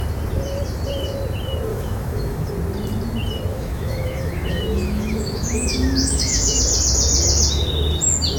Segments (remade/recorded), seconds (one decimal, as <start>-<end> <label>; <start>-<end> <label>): 0.0-1.7 recorded; 1.7-2.5 remade; 2.5-3.5 recorded; 3.5-6.6 remade; 6.6-8.4 recorded